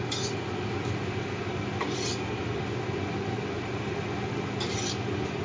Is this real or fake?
real